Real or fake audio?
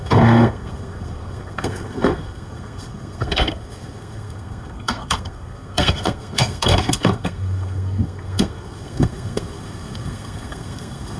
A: fake